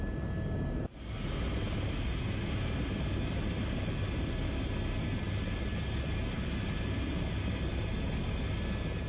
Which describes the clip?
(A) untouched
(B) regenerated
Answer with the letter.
A